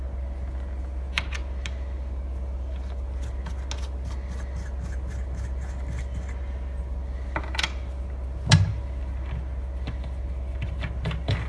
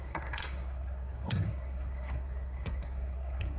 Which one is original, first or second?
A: first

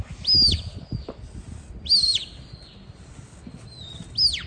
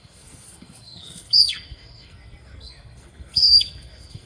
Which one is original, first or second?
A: first